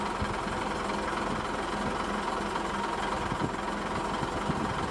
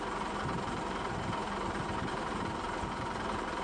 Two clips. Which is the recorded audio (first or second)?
first